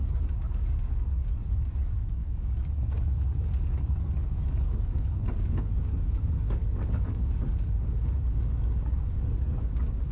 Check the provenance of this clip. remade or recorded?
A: remade